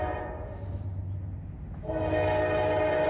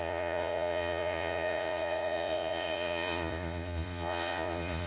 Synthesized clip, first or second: second